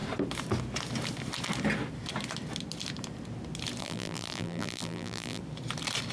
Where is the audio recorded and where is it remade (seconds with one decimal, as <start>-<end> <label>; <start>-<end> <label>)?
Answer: 0.0-3.8 recorded; 3.8-5.4 remade; 5.4-6.1 recorded